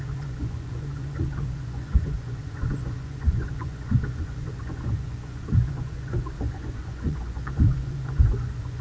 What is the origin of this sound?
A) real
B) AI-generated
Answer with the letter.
B